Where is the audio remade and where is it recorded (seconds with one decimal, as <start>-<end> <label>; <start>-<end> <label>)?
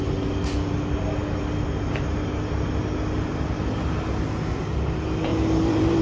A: 0.0-5.3 recorded; 5.3-6.0 remade